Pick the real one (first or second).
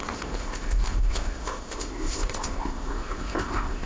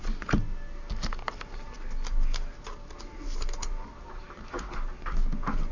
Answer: second